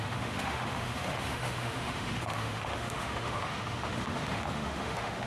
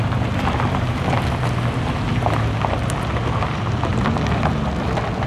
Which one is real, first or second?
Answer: second